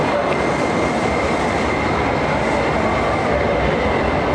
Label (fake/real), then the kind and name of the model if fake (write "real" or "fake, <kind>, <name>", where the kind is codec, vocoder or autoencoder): real